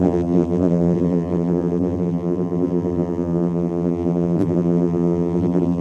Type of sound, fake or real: fake